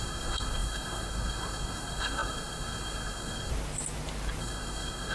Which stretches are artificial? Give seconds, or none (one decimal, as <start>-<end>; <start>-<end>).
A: 0.0-3.5; 4.4-5.1